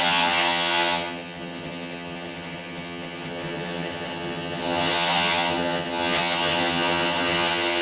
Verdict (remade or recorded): remade